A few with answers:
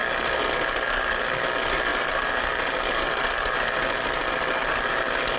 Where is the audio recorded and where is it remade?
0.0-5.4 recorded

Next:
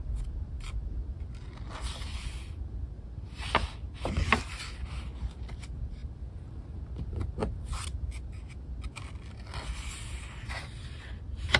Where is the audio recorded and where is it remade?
0.0-11.6 recorded

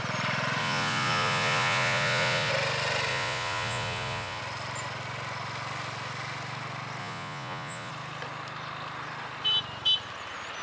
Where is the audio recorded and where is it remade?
0.0-0.6 recorded; 0.6-2.5 remade; 2.5-3.1 recorded; 3.1-4.4 remade; 4.4-7.0 recorded; 7.0-7.9 remade; 7.9-10.6 recorded

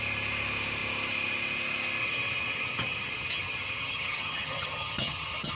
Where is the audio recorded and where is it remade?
0.0-2.0 recorded; 2.0-5.5 remade